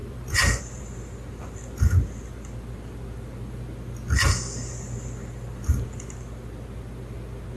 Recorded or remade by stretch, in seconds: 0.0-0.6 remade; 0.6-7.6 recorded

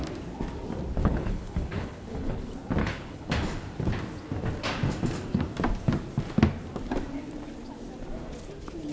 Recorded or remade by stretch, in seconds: 0.0-1.0 recorded; 1.0-2.4 remade; 2.4-2.8 recorded; 2.8-3.3 remade; 3.3-8.9 recorded

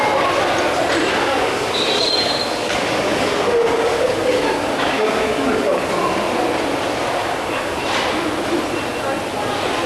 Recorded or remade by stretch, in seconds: 0.0-1.1 recorded; 1.1-5.9 remade; 5.9-7.2 recorded; 7.2-7.8 remade; 7.8-9.9 recorded

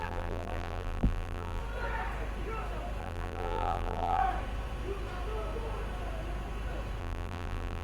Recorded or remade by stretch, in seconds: 0.0-1.6 remade; 1.6-3.0 recorded; 3.0-4.2 remade; 4.2-7.0 recorded; 7.0-7.8 remade

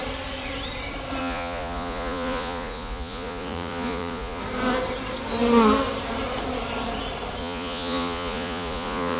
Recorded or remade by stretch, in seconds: 0.0-1.2 recorded; 1.2-4.4 remade; 4.4-7.4 recorded; 7.4-9.2 remade

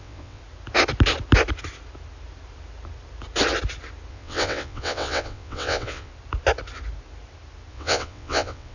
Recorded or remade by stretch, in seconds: 0.0-0.4 remade; 0.4-4.1 recorded; 4.1-6.1 remade; 6.1-7.7 recorded; 7.7-8.7 remade

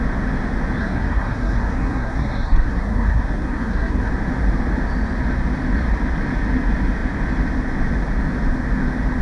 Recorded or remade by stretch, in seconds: 0.0-0.8 recorded; 0.8-4.1 remade; 4.1-9.2 recorded

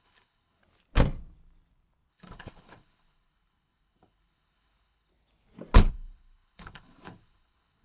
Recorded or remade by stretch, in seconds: 0.0-0.6 remade; 0.6-2.1 recorded; 2.1-5.1 remade; 5.1-5.9 recorded; 5.9-7.8 remade